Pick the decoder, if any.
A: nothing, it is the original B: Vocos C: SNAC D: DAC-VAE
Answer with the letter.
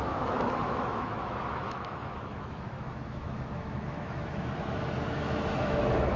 D